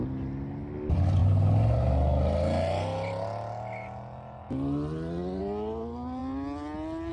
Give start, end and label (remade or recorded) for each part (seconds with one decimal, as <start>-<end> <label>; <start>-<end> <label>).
0.0-7.1 recorded